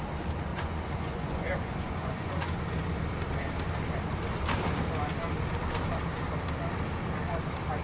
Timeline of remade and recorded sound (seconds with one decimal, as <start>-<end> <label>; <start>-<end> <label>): 0.0-0.5 recorded; 0.5-2.6 remade; 2.6-7.8 recorded